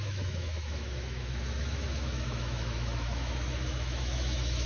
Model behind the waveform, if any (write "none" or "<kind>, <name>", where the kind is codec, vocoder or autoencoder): autoencoder, DAC-VAE